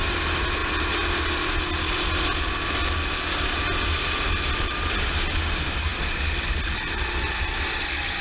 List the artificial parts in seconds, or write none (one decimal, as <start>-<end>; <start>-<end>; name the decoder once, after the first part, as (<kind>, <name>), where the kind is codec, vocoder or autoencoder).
none

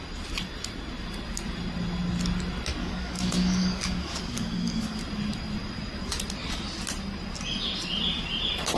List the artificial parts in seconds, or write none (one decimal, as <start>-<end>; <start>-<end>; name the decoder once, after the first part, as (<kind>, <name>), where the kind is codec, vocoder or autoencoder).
2.8-5.0 (codec, DAC)

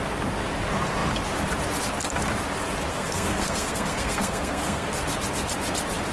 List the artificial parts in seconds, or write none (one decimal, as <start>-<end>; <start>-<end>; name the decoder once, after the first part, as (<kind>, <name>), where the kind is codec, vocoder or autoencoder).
2.9-4.9 (codec, SNAC)

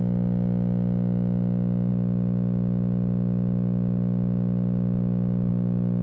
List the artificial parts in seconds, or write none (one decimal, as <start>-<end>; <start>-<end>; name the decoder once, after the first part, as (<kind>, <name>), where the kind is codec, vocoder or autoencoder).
none

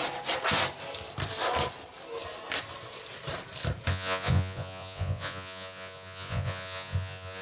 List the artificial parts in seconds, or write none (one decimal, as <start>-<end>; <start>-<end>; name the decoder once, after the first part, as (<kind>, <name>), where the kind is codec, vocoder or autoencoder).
3.9-7.4 (vocoder, Vocos)